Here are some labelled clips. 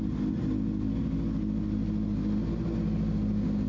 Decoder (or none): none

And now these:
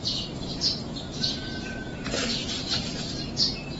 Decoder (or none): none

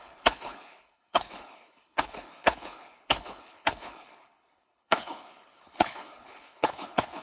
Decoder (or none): codec, HILCodec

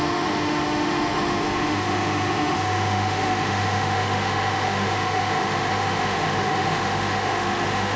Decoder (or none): autoencoder, DAC-VAE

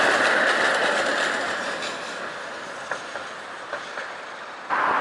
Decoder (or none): none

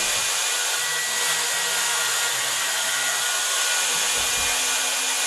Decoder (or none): none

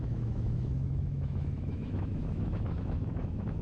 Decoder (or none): autoencoder, DAC-VAE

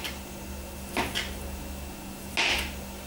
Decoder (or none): none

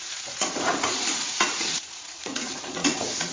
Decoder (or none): vocoder, Vocos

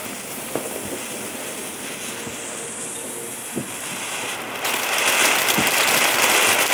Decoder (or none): none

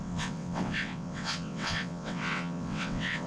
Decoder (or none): vocoder, WaveNeXt